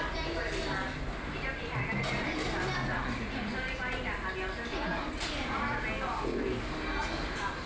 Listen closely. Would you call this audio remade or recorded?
recorded